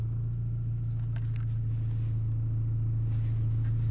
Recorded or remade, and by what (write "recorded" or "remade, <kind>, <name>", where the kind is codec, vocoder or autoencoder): recorded